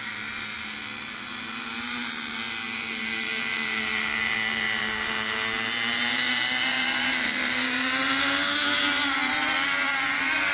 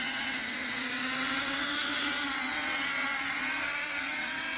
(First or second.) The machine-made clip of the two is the second